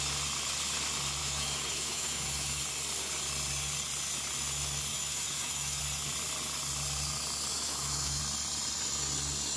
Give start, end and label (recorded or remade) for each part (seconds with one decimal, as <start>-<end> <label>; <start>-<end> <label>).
0.0-1.2 recorded; 1.2-2.6 remade; 2.6-4.9 recorded; 4.9-5.8 remade; 5.8-7.5 recorded; 7.5-8.2 remade; 8.2-9.6 recorded